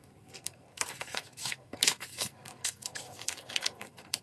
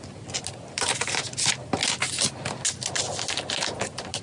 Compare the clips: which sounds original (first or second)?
second